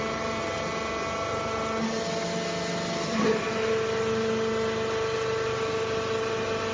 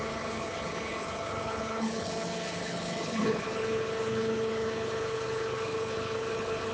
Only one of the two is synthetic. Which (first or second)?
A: second